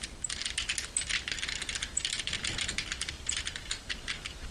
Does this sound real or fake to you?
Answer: real